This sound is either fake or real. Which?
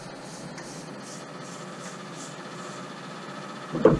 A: real